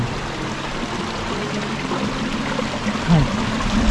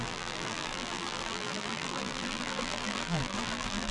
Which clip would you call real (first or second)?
first